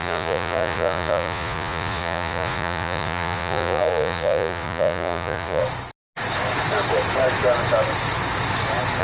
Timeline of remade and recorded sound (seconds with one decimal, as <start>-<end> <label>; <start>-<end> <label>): 0.0-5.6 remade; 5.6-9.0 recorded